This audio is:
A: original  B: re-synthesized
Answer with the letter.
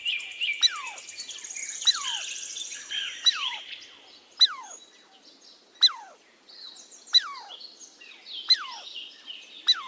A